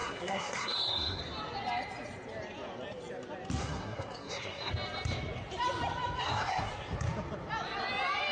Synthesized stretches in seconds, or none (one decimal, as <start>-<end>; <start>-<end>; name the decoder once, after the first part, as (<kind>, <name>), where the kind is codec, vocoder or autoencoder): 0.0-1.2 (codec, SNAC); 3.6-4.7; 6.2-6.7